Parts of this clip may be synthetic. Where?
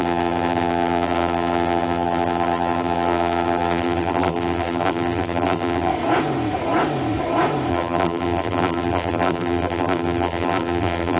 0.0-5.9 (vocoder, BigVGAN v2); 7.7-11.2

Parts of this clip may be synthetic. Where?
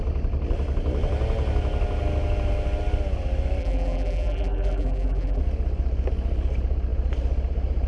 3.6-5.4 (vocoder, BigVGAN v2)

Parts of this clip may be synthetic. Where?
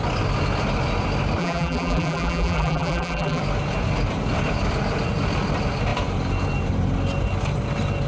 1.4-3.4 (vocoder, BigVGAN v2)